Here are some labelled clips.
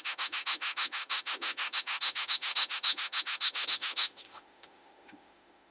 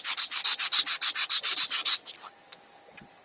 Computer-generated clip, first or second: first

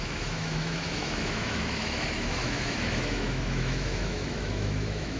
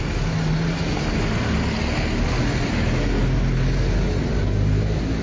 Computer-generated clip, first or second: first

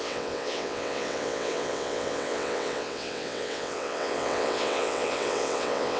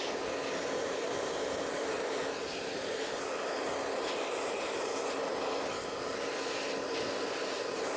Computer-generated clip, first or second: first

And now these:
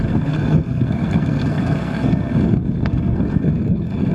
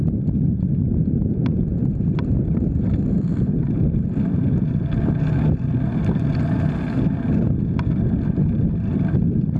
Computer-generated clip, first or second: first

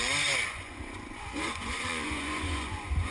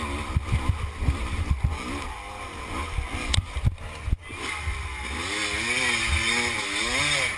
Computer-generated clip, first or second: first